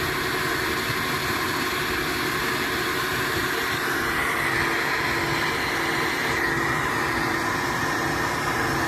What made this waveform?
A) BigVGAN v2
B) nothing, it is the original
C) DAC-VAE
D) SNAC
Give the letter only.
B